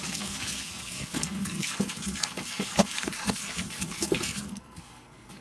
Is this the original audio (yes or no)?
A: no